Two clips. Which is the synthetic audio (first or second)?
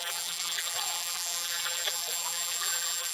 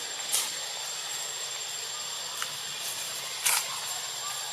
first